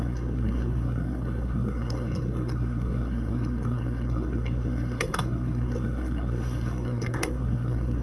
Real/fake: fake